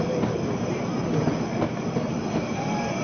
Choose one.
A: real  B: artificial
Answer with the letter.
A